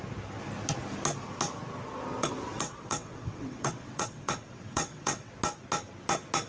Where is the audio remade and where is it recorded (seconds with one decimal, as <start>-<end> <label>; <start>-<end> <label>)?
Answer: 0.0-2.2 recorded; 2.2-5.3 remade; 5.3-6.5 recorded